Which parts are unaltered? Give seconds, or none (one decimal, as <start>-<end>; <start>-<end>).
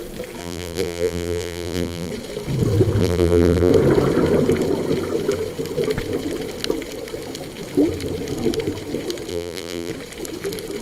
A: 0.0-0.4; 2.1-3.0; 3.7-9.3; 9.9-10.8